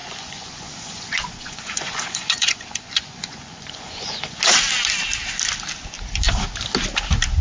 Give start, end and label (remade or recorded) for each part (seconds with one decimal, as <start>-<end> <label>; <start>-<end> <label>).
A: 0.0-4.4 remade; 4.4-7.4 recorded